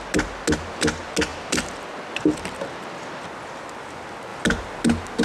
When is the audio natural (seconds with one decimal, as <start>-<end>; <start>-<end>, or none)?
0.0-5.2